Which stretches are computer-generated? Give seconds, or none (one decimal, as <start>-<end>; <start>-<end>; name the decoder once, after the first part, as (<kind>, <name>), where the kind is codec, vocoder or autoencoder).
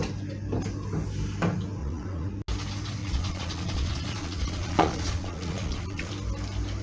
1.8-2.3 (vocoder, Vocos); 3.0-6.1